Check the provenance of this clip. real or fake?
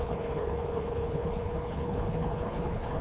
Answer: fake